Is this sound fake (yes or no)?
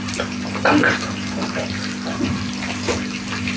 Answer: no